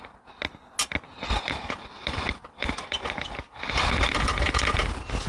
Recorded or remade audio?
recorded